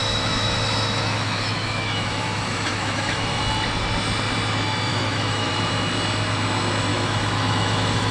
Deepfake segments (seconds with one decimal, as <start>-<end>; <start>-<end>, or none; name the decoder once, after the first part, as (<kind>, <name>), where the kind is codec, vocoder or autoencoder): 0.0-3.4 (autoencoder, DAC-VAE); 4.9-5.5; 6.9-8.1